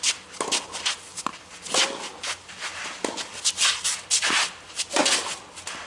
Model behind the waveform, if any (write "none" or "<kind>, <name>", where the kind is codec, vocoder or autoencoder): none